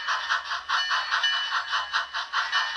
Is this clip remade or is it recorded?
recorded